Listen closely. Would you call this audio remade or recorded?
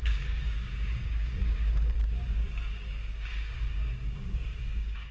remade